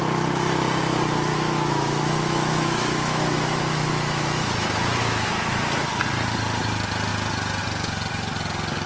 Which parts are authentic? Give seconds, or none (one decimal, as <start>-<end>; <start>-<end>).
0.0-1.3; 5.9-8.9